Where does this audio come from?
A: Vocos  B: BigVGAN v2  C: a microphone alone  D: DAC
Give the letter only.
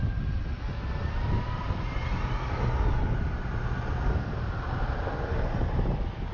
C